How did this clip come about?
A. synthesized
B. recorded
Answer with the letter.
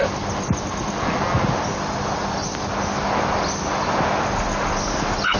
B